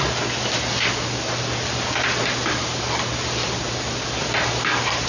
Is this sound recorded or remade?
recorded